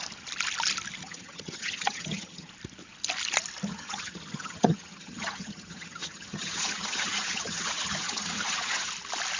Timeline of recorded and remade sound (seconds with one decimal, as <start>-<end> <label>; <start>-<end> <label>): 0.0-1.0 recorded; 1.0-2.5 remade; 2.5-3.7 recorded; 3.7-8.9 remade; 8.9-9.4 recorded